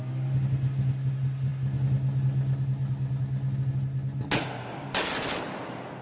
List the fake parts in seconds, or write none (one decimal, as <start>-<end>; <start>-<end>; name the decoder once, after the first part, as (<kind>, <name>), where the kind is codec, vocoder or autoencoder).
none